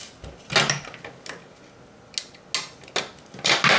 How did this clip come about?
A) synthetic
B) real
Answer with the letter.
B